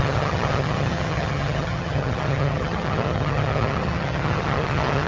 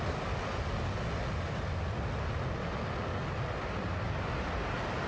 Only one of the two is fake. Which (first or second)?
first